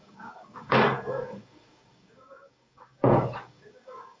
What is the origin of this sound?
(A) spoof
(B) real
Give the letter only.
A